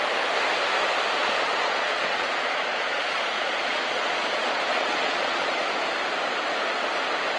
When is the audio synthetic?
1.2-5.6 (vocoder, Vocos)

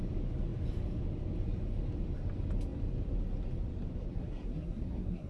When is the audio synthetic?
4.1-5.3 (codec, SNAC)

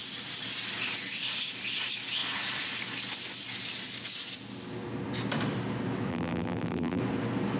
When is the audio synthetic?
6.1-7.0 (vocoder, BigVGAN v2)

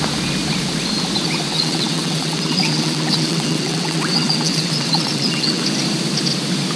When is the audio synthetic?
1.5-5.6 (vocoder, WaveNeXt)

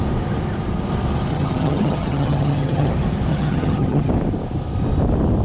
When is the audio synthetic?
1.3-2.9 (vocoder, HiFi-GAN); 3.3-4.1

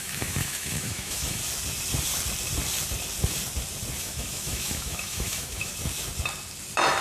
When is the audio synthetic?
0.0-1.4 (autoencoder, DAC-VAE); 4.0-5.7

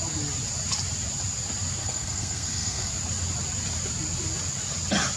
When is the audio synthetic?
1.8-2.9 (codec, SNAC)

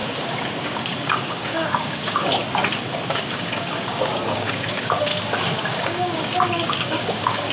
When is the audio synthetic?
0.0-2.4 (codec, DAC); 3.1-5.1; 5.6-7.5